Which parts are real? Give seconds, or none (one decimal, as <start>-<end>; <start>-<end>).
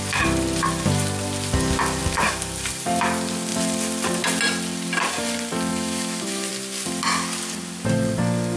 0.0-5.7; 6.5-8.6